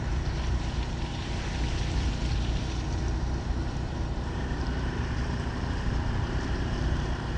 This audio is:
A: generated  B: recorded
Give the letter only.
A